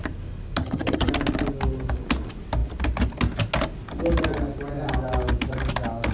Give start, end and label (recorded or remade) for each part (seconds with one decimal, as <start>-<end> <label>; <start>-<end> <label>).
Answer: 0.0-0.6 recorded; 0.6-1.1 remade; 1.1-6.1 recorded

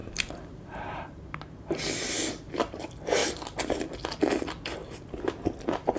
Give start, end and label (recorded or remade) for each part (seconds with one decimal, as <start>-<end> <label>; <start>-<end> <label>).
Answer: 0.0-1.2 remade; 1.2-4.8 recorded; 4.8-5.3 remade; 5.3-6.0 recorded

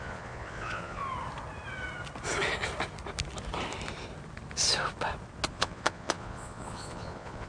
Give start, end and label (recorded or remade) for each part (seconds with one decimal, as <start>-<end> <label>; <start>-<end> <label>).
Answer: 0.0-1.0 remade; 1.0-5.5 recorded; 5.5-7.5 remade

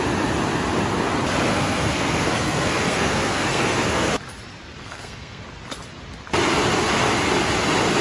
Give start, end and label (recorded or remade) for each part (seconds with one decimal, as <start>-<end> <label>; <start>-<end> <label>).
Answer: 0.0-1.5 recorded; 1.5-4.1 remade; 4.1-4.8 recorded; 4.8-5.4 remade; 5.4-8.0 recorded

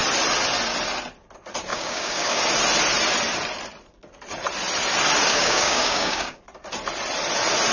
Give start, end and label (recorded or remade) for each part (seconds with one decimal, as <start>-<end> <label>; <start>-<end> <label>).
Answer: 0.0-1.7 recorded; 1.7-2.4 remade; 2.4-5.3 recorded; 5.3-6.4 remade; 6.4-7.7 recorded